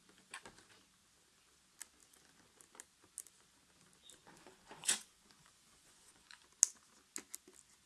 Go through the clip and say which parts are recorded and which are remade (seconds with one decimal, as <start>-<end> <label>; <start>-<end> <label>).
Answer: 0.0-4.2 recorded; 4.2-6.4 remade; 6.4-7.9 recorded